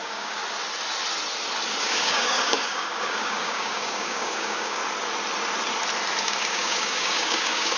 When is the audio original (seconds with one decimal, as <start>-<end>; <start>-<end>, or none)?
0.4-1.8; 4.8-6.2